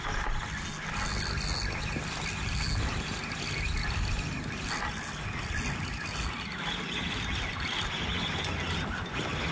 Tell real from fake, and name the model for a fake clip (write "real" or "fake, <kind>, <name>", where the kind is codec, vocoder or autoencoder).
real